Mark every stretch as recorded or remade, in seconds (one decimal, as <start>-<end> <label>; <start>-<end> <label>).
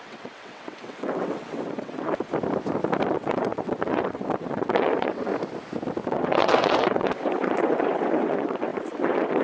0.0-2.3 remade; 2.3-3.1 recorded; 3.1-5.3 remade; 5.3-6.1 recorded; 6.1-9.4 remade